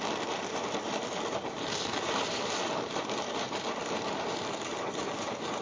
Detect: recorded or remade remade